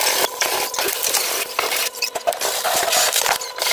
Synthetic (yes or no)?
yes